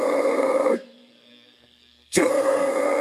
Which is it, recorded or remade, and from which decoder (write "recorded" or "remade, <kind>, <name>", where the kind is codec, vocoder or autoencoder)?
remade, codec, SNAC